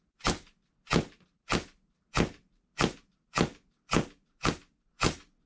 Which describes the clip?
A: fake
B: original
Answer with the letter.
B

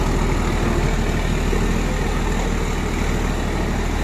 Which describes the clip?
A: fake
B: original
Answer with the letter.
B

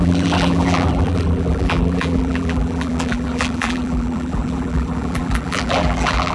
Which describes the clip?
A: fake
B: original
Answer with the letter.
A